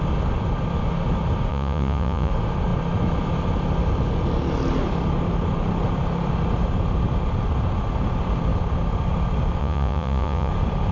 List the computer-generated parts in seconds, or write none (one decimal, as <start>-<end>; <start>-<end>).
1.5-2.3; 9.6-10.5